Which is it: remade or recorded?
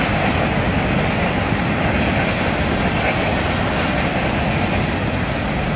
recorded